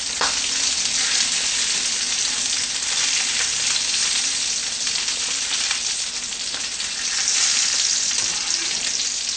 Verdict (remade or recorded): recorded